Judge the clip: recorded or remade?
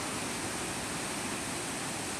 recorded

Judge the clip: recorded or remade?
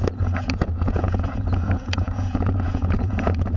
remade